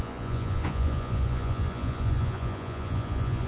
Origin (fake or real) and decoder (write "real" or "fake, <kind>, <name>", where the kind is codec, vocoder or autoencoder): fake, vocoder, Vocos